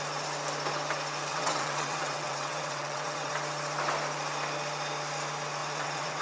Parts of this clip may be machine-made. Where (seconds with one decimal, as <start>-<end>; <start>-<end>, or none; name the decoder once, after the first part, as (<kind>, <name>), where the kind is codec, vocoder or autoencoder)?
1.3-3.3 (vocoder, WaveNeXt); 5.6-6.2